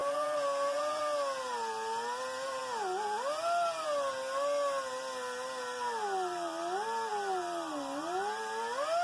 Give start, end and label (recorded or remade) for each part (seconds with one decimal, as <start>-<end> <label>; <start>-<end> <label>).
0.0-1.0 remade; 1.0-9.0 recorded